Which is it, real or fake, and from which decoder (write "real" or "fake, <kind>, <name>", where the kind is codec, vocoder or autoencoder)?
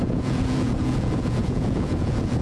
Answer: fake, vocoder, Vocos